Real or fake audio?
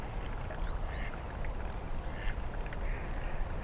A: real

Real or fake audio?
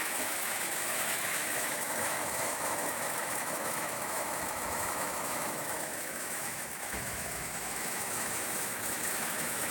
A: fake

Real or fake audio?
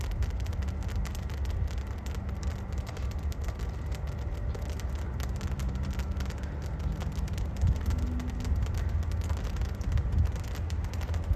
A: real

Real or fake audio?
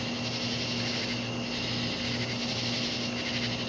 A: real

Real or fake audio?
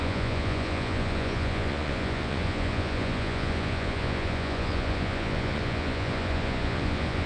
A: fake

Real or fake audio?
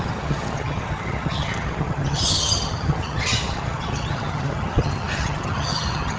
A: fake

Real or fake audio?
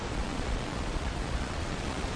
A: fake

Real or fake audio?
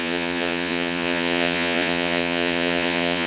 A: fake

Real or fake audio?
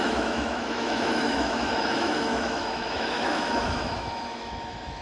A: fake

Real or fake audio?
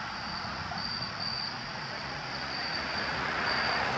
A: fake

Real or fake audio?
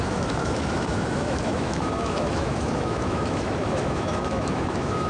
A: fake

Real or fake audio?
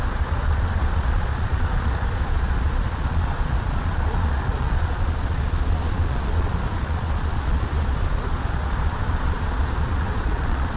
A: fake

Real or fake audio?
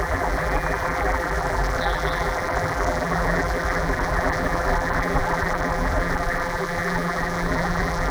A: fake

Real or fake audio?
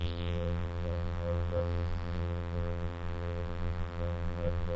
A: fake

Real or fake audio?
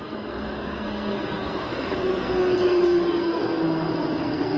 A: fake